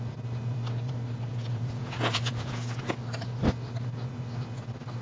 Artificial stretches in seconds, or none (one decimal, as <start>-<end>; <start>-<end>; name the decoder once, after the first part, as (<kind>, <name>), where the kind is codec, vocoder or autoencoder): 1.3-2.9 (vocoder, Vocos)